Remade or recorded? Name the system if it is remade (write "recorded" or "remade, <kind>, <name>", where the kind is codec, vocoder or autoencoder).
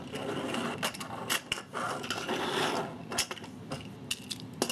recorded